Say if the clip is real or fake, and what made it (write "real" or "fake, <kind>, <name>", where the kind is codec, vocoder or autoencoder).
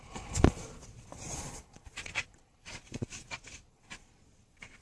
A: fake, vocoder, Vocos